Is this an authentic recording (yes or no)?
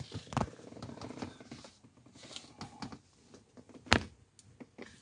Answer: yes